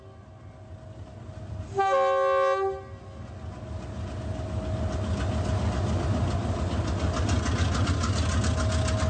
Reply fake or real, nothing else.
real